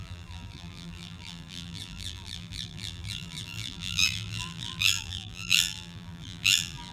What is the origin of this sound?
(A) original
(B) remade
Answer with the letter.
B